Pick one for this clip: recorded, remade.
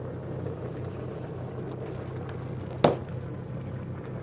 recorded